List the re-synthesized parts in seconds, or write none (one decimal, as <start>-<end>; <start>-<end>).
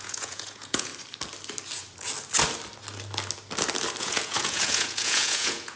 0.0-0.9; 4.0-5.8